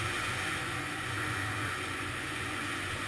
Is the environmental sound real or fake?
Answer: fake